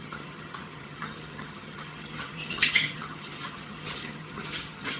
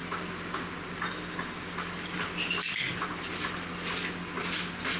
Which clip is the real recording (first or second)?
second